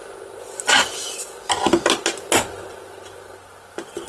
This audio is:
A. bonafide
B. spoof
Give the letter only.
A